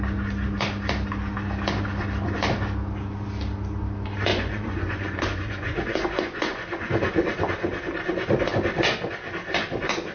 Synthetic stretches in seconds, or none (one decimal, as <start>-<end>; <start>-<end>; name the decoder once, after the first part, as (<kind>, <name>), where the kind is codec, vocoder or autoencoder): 4.3-6.9 (vocoder, Vocos)

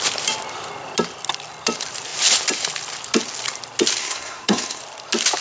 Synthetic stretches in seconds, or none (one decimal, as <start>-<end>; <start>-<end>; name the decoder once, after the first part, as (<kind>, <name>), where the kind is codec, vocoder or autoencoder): 4.0-4.8 (codec, SNAC)

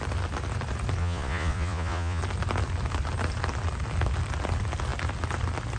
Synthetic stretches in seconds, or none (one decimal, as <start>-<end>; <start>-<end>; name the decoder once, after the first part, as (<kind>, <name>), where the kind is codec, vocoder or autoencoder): 1.0-2.2 (vocoder, Vocos)

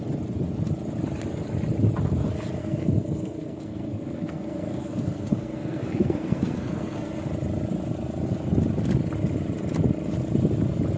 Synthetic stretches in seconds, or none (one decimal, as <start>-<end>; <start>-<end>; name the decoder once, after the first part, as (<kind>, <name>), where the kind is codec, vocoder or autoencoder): 2.6-7.2 (codec, SNAC)

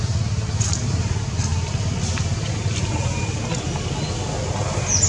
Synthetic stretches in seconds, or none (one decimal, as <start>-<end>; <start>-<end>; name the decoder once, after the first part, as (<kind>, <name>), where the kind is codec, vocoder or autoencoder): none

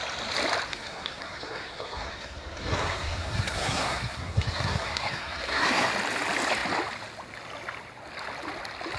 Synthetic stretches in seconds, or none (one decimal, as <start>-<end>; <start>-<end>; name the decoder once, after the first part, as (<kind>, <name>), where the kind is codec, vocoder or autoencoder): 0.7-5.9 (codec, SNAC)

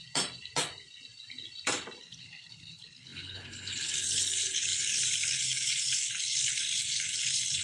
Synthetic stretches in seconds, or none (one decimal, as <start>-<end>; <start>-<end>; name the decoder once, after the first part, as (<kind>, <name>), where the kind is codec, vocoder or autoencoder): 2.0-7.6 (codec, HILCodec)

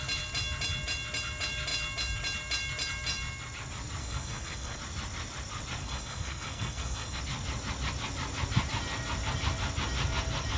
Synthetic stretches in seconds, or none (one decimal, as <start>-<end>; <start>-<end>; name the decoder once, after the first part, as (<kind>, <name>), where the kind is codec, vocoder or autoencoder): 4.0-4.8 (codec, SNAC); 5.8-7.2